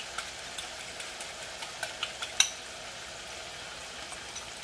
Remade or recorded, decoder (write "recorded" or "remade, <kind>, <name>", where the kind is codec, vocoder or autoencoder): recorded